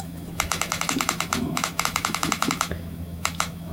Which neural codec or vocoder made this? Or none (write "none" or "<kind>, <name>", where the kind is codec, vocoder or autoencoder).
autoencoder, DAC-VAE